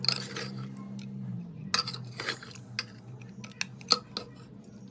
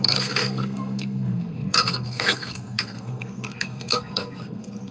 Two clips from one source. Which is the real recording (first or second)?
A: first